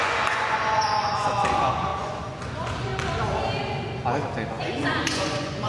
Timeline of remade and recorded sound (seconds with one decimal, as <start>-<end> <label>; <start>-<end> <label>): 0.0-2.9 remade; 2.9-4.5 recorded; 4.5-5.7 remade